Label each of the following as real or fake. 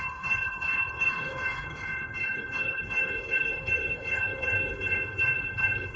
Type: fake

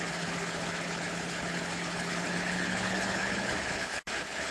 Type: fake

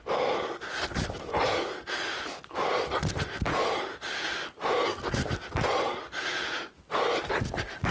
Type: real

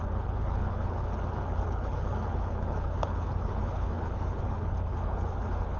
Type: fake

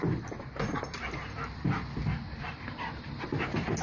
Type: real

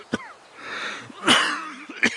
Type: real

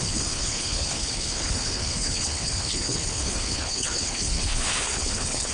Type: fake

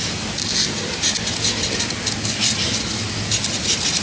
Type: real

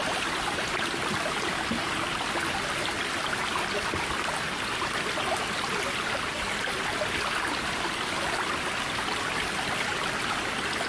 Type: real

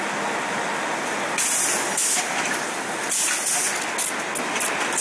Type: real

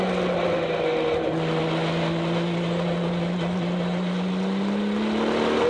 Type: real